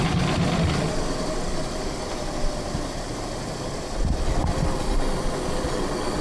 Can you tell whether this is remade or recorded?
recorded